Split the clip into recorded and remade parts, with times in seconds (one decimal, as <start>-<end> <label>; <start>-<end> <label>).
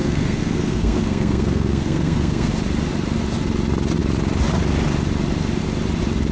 0.0-2.5 remade; 2.5-6.3 recorded